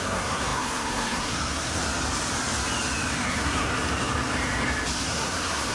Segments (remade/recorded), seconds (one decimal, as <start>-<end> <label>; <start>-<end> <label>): 0.0-1.8 remade; 1.8-3.1 recorded; 3.1-3.7 remade; 3.7-5.0 recorded; 5.0-5.7 remade